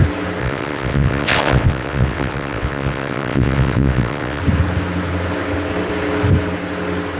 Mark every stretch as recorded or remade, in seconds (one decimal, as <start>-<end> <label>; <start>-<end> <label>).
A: 0.0-0.4 recorded; 0.4-4.4 remade; 4.4-7.2 recorded